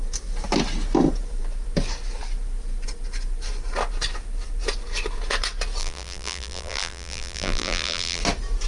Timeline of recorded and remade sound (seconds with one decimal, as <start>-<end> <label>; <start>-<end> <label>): 0.0-5.8 recorded; 5.8-8.2 remade; 8.2-8.7 recorded